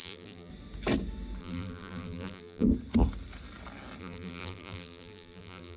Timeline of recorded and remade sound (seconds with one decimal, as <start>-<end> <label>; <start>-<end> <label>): 0.0-0.5 remade; 0.5-1.4 recorded; 1.4-2.7 remade; 2.7-4.0 recorded; 4.0-5.8 remade